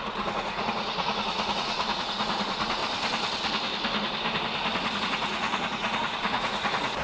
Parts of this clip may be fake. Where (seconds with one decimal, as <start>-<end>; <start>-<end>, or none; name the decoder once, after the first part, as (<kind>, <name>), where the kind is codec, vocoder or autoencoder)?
0.0-2.8 (vocoder, Vocos); 5.0-7.0